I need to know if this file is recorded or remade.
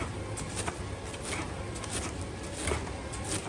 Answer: recorded